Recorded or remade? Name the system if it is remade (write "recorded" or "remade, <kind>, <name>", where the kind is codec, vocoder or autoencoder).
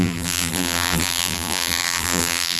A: remade, vocoder, BigVGAN v2